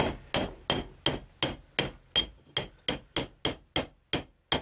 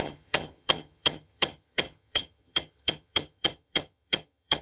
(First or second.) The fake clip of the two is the second